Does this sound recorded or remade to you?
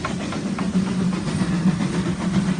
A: recorded